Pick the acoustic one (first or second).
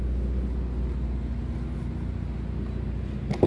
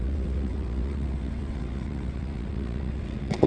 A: first